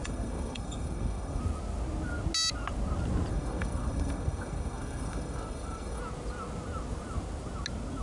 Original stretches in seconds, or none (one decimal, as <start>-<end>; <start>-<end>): 1.4-3.3; 6.0-8.0